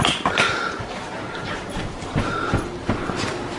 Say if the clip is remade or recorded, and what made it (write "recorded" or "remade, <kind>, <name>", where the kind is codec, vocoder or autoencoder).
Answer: recorded